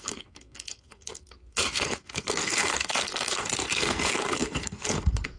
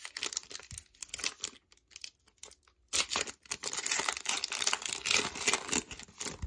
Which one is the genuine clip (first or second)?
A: second